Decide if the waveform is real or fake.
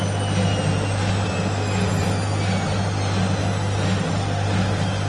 real